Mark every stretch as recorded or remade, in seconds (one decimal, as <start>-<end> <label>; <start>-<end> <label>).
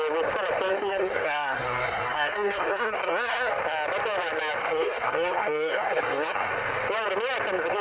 0.0-0.7 recorded; 0.7-3.5 remade; 3.5-4.6 recorded; 4.6-6.5 remade; 6.5-7.8 recorded